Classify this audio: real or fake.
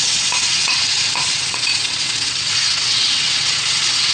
fake